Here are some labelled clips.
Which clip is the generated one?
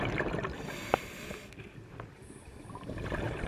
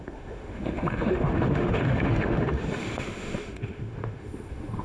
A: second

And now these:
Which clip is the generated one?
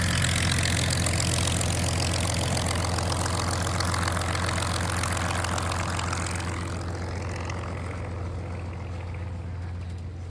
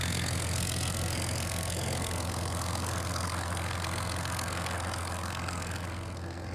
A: second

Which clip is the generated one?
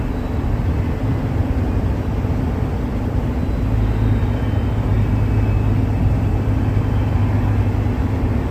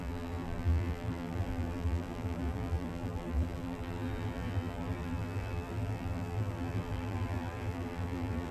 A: second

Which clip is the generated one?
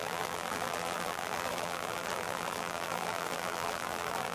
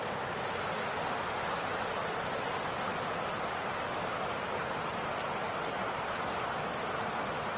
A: first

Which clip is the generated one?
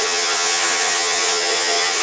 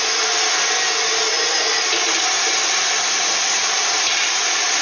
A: first